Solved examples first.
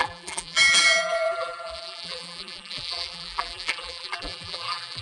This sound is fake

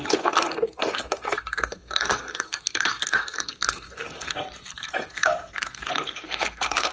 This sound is fake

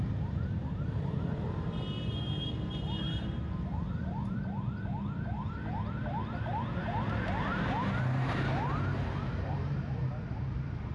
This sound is fake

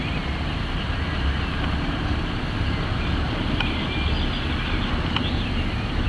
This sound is real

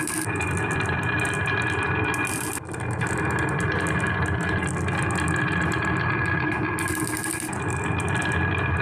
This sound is real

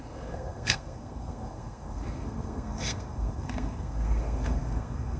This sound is fake